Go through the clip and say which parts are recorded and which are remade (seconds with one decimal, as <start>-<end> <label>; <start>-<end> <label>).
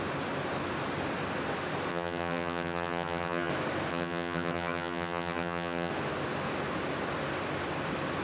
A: 0.0-1.9 recorded; 1.9-3.5 remade; 3.5-3.9 recorded; 3.9-5.9 remade; 5.9-8.2 recorded